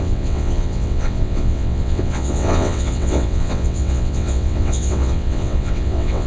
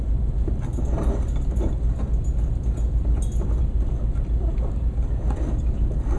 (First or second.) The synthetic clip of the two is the first